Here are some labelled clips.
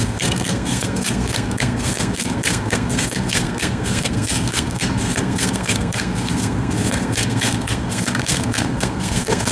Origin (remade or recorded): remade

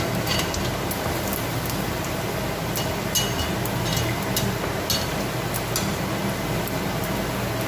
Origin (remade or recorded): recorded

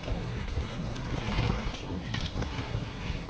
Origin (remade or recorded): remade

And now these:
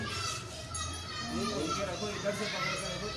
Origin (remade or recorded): recorded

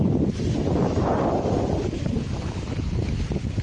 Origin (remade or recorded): recorded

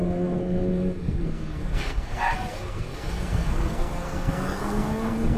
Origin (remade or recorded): remade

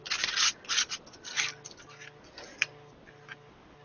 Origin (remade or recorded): recorded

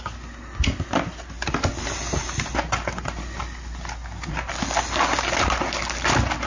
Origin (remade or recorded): recorded